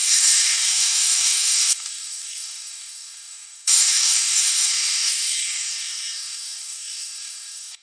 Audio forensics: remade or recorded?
remade